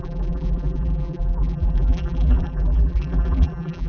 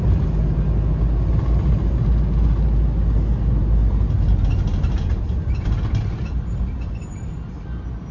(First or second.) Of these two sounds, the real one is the second